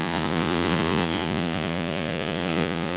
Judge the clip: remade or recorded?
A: remade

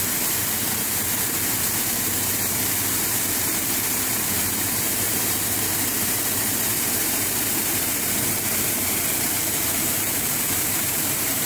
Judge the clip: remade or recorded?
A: remade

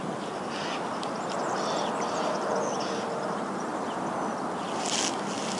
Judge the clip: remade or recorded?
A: recorded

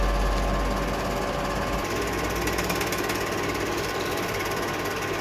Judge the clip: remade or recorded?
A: recorded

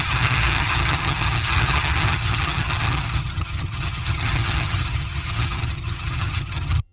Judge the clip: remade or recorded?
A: remade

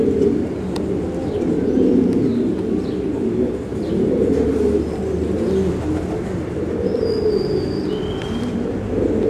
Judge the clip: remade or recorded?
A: recorded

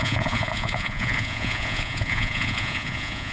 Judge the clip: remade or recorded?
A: remade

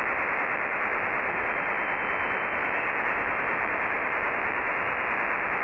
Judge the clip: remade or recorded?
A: remade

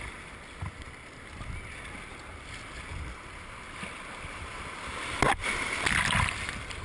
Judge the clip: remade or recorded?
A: recorded